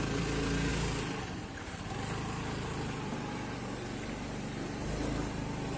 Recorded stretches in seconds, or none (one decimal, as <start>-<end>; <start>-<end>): 0.0-5.8